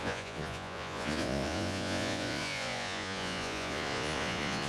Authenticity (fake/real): fake